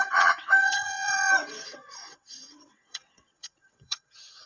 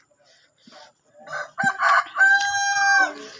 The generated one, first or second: first